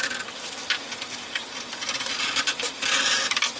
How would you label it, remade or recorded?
recorded